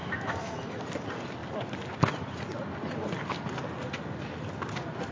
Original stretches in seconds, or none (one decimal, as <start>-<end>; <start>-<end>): 0.8-5.1